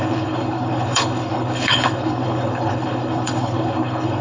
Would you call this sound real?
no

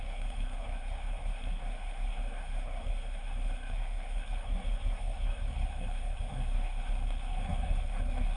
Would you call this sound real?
no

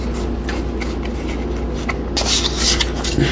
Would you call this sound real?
yes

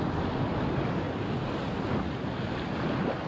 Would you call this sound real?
yes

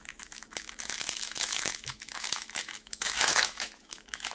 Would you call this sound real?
no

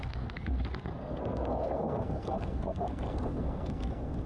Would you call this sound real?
no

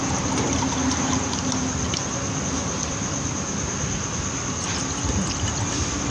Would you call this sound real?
yes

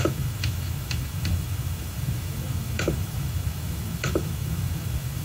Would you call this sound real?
no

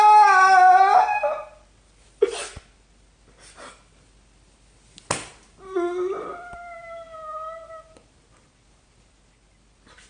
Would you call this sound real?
yes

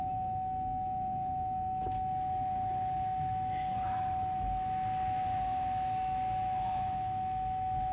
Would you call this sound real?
no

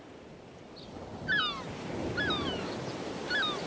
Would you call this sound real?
yes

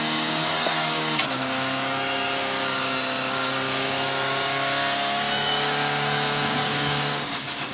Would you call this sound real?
no